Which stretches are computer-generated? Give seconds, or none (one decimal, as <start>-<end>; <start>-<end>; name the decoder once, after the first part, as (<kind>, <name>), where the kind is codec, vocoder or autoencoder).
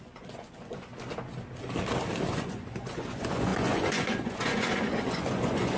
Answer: 0.0-0.9 (vocoder, Vocos); 2.3-5.8